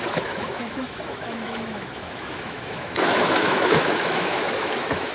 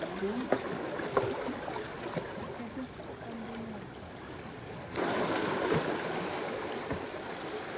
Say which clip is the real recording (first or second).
second